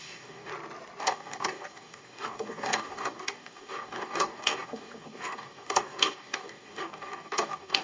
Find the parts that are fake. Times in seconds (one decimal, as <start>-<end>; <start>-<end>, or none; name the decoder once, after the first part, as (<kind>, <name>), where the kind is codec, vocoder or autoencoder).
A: 0.0-0.5 (codec, DAC); 1.0-7.8